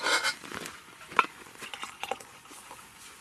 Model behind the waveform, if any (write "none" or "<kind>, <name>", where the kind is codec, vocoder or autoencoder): vocoder, Vocos